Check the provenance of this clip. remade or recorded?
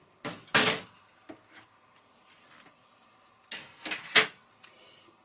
recorded